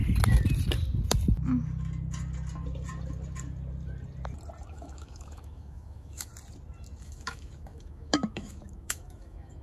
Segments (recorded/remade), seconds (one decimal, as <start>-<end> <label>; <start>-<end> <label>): 0.0-4.7 recorded; 4.7-6.3 remade; 6.3-7.0 recorded; 7.0-9.6 remade

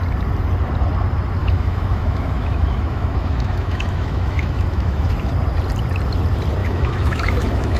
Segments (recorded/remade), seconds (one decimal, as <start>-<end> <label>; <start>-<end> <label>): 0.0-1.4 recorded; 1.4-5.3 remade; 5.3-6.6 recorded; 6.6-7.8 remade

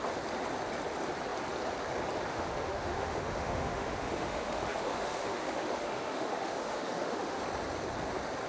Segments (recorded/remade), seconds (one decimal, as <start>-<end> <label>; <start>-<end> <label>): 0.0-2.3 recorded; 2.3-7.4 remade; 7.4-8.5 recorded

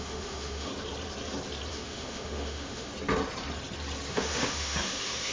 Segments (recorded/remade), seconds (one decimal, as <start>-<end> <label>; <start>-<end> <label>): 0.0-0.7 remade; 0.7-1.7 recorded; 1.7-2.9 remade; 2.9-4.1 recorded; 4.1-5.3 remade

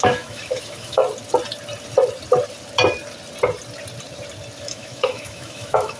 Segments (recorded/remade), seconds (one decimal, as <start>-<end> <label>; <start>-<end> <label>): 0.0-1.0 remade; 1.0-4.6 recorded; 4.6-6.0 remade